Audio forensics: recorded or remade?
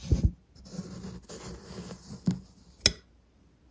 recorded